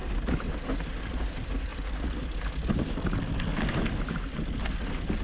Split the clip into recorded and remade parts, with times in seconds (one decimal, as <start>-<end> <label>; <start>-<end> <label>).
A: 0.0-5.2 recorded